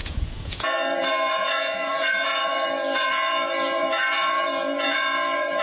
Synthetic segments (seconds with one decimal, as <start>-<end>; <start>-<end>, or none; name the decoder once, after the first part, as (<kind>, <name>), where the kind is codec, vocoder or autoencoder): 0.0-5.6 (vocoder, Vocos)